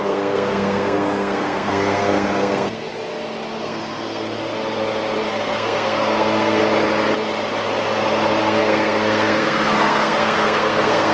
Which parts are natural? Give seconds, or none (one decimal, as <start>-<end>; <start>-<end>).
2.9-3.6; 4.5-5.3; 6.6-8.4